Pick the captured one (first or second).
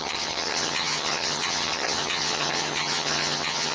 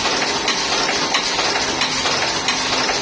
second